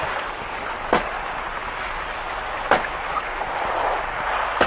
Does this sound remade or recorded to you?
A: recorded